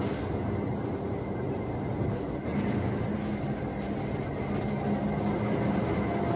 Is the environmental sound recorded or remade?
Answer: recorded